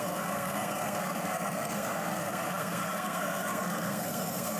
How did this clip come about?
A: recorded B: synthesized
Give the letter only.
B